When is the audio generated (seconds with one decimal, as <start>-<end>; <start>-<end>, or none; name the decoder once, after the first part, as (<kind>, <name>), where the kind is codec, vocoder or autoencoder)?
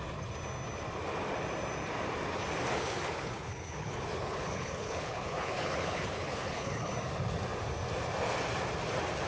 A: 2.7-6.9 (codec, HILCodec)